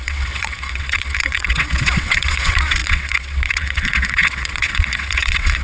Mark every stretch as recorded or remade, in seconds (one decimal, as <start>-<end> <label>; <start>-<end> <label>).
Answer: 0.0-5.6 remade